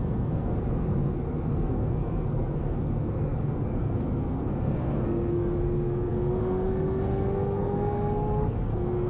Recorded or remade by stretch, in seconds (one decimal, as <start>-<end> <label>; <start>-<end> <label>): 0.0-9.1 remade